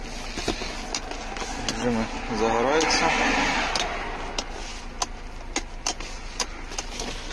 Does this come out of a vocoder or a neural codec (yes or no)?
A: no